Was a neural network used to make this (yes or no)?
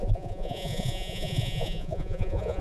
yes